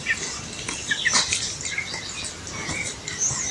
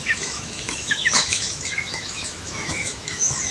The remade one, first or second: second